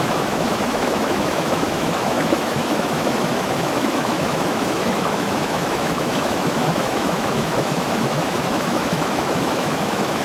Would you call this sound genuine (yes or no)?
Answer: no